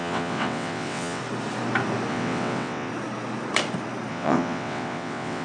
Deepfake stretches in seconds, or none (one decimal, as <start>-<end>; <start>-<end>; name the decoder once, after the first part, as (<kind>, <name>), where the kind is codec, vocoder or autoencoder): 0.0-1.2 (vocoder, WaveNeXt); 2.1-2.9; 4.1-5.4